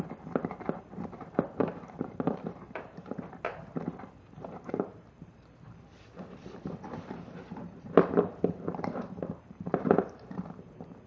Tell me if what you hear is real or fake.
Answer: fake